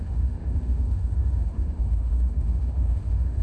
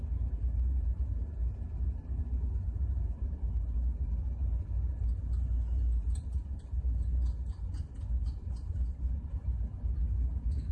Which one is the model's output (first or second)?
first